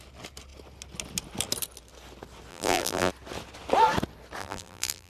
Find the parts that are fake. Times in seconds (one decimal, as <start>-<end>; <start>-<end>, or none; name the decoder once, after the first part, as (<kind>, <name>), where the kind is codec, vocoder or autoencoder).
2.5-3.1 (vocoder, BigVGAN v2); 4.4-5.1